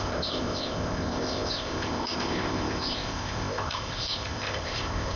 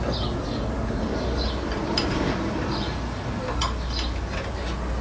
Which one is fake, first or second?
first